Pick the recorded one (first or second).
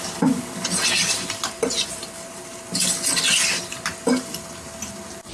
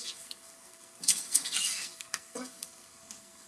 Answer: first